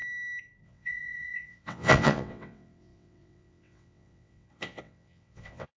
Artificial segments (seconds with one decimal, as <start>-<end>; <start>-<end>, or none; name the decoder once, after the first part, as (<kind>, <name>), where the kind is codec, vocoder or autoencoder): 0.6-5.8 (vocoder, WaveNeXt)